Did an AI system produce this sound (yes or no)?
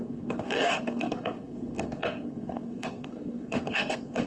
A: yes